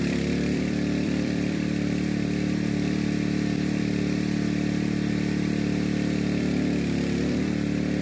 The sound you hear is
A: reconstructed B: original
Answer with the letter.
A